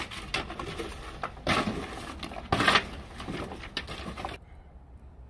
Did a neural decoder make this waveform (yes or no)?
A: no